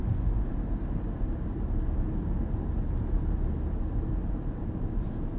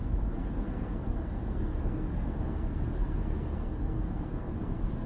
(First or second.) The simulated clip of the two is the second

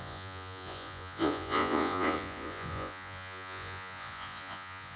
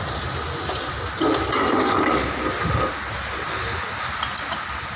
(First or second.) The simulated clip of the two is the first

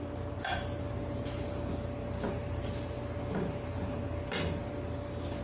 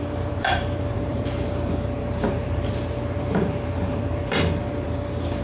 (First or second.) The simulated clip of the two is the second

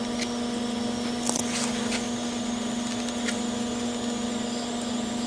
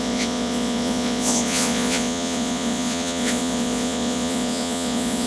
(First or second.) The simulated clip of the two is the second